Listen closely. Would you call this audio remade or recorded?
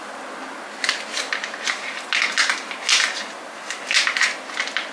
recorded